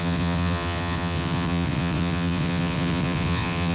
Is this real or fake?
fake